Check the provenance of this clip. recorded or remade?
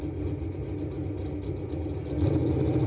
recorded